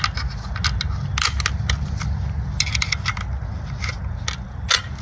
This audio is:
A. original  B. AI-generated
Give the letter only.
A